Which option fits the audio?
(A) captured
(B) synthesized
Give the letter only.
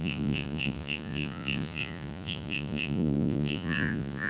B